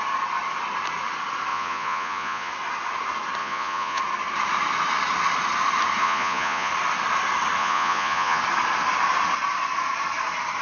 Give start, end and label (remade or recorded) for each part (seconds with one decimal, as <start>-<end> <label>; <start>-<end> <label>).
0.0-1.5 recorded; 1.5-2.5 remade; 2.5-3.4 recorded; 3.4-4.0 remade; 4.0-6.0 recorded; 6.0-6.7 remade; 6.7-7.6 recorded; 7.6-8.4 remade; 8.4-10.6 recorded